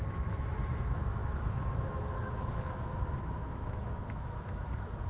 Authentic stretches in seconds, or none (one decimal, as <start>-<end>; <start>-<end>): none